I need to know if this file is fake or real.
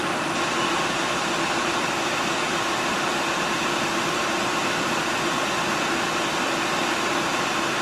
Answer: real